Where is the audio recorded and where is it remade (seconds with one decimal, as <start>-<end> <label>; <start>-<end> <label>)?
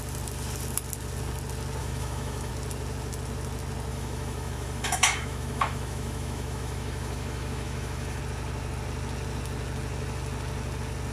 0.0-1.8 recorded; 1.8-2.5 remade; 2.5-3.9 recorded; 3.9-8.2 remade; 8.2-11.1 recorded